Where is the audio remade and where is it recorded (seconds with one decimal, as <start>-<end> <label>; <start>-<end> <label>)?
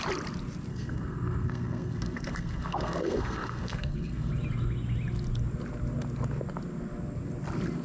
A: 0.0-0.7 recorded; 0.7-4.3 remade; 4.3-7.8 recorded